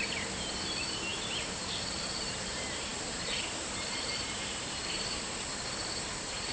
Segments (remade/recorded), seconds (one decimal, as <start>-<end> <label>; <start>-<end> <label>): 0.0-6.5 remade